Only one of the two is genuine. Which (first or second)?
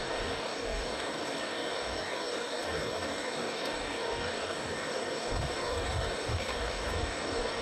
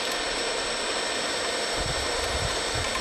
second